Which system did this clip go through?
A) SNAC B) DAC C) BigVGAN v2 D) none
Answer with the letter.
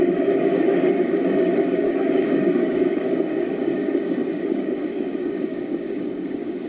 B